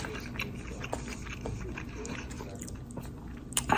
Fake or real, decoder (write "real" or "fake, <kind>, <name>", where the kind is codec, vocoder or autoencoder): real